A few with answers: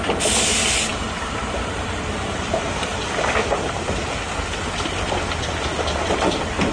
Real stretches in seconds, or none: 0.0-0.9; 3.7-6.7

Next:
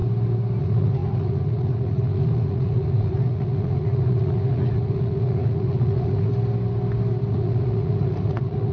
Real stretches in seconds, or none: 0.0-0.6; 6.3-7.3

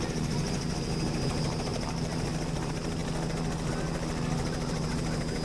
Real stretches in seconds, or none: 0.0-1.7; 2.6-5.4

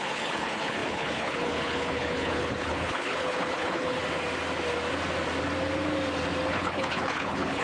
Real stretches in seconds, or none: 4.0-6.5

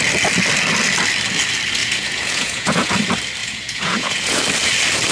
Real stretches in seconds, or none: 0.0-1.8; 2.9-3.4; 4.4-5.1

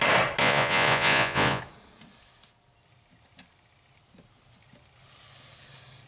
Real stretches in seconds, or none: 0.0-0.4; 1.6-6.1

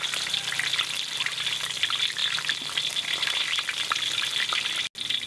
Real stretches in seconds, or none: 0.0-5.3

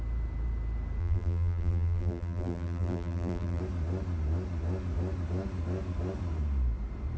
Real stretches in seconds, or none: 0.0-1.0; 3.6-7.2